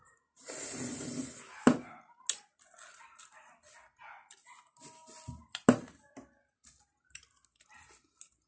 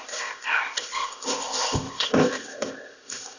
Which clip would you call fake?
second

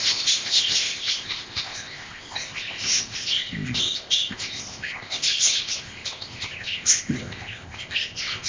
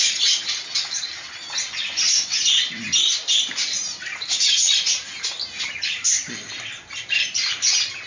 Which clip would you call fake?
first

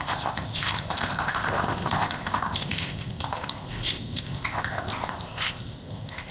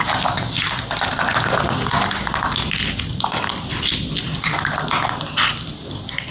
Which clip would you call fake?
first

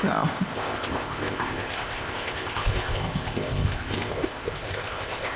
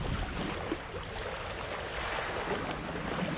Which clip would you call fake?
first